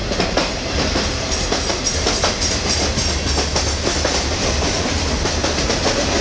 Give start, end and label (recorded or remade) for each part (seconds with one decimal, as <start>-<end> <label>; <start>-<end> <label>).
0.0-1.7 remade; 1.7-5.4 recorded; 5.4-6.2 remade